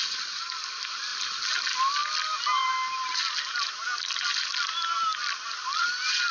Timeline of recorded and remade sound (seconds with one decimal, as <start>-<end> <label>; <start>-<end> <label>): 0.0-6.3 recorded